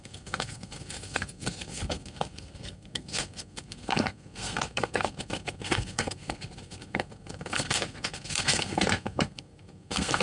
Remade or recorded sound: remade